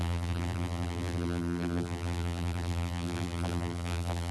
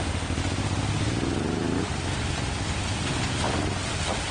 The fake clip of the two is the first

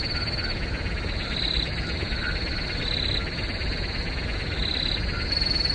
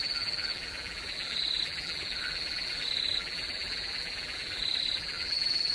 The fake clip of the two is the second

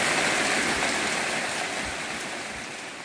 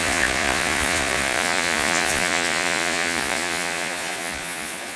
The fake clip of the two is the second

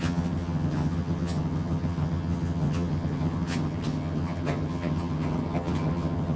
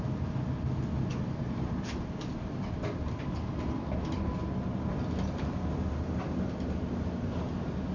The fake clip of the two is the first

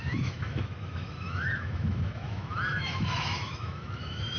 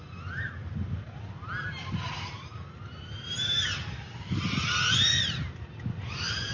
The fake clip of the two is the first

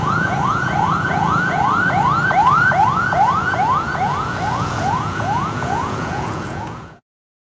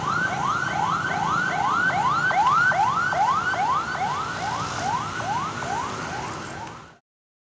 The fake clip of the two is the first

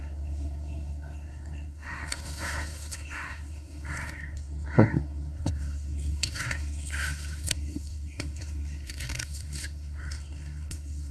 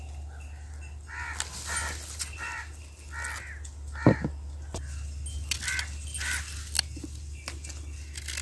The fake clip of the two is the first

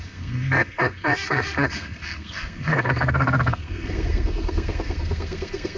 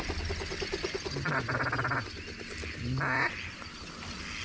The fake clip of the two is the first